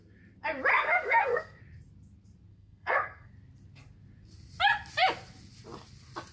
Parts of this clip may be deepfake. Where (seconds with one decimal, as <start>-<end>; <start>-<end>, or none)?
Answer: 0.7-1.6; 2.5-3.3